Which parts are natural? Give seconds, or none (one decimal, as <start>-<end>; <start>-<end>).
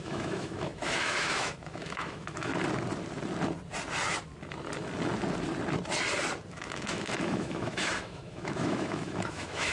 2.5-6.5